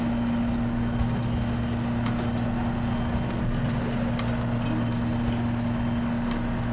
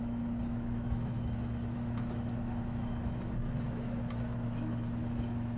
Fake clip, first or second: second